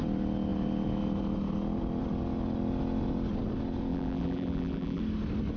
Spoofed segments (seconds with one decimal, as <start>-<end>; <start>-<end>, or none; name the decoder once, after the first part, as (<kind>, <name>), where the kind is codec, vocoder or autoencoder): 3.9-5.0 (vocoder, BigVGAN v2)